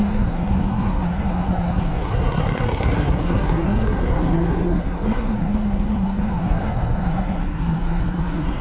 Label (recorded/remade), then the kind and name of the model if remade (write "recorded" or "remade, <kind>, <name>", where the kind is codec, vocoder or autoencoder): remade, codec, SNAC